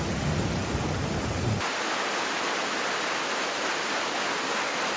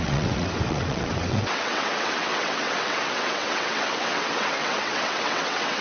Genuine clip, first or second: first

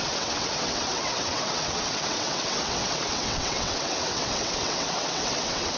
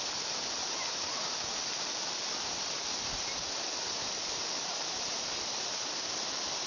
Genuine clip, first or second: second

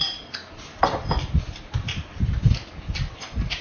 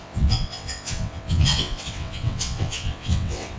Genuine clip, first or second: first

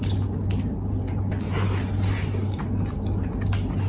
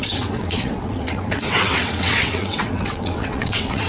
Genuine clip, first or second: first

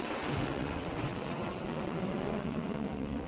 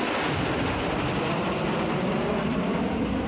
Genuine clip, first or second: second